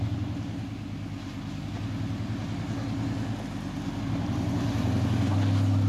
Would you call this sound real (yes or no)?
yes